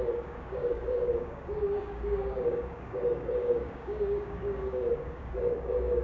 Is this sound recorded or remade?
remade